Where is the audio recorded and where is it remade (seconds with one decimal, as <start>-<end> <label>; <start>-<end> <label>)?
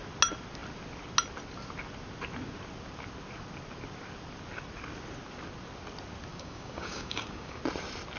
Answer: 0.0-6.3 recorded; 6.3-7.6 remade; 7.6-8.2 recorded